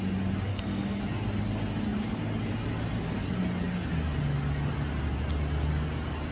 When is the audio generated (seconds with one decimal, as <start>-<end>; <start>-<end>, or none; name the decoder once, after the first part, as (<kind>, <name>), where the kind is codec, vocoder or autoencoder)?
0.5-1.0 (codec, SNAC)